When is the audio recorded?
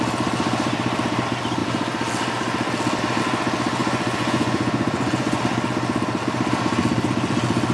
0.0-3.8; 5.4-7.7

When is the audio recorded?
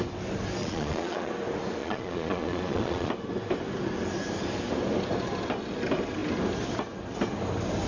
0.0-0.6; 1.3-1.8; 3.1-7.9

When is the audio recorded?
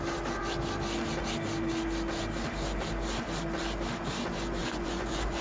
0.0-4.6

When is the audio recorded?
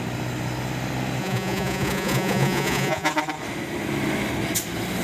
0.0-1.2; 3.1-5.0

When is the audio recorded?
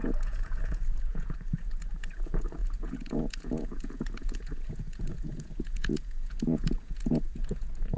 none